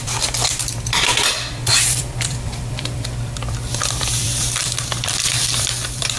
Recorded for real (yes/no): no